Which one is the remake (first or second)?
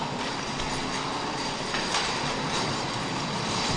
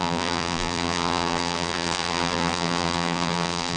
second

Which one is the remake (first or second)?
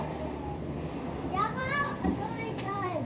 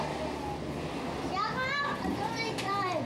first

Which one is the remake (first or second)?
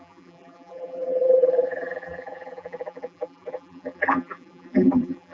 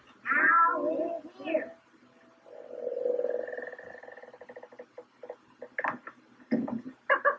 first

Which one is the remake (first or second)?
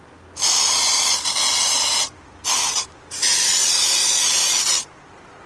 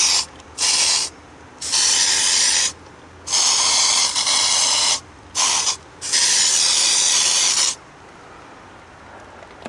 second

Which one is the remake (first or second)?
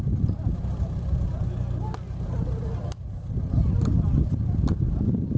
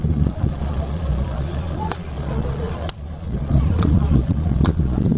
second